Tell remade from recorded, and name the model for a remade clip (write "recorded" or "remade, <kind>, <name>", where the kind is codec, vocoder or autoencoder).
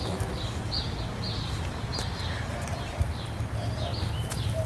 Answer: recorded